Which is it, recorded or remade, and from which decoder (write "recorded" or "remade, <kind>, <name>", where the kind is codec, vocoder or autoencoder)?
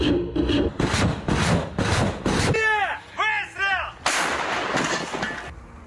recorded